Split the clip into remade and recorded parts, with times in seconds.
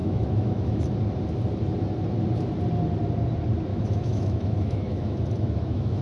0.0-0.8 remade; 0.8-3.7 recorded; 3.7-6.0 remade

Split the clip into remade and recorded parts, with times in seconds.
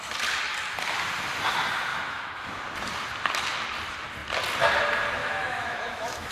0.0-1.9 recorded; 1.9-2.6 remade; 2.6-5.2 recorded; 5.2-6.3 remade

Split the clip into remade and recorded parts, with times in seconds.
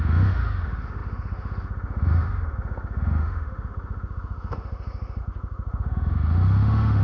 0.0-7.0 remade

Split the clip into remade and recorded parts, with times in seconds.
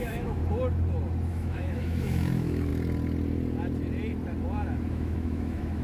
0.0-0.4 remade; 0.4-1.3 recorded; 1.3-2.7 remade; 2.7-4.9 recorded; 4.9-5.8 remade